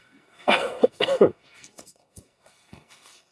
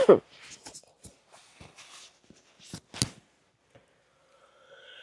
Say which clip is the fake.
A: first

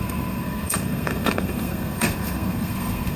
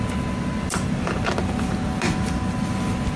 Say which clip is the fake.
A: first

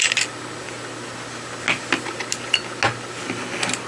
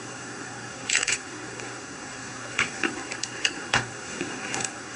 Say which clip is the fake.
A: second